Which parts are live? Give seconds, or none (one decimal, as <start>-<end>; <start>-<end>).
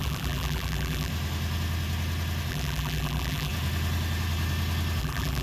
1.1-2.5; 3.5-5.0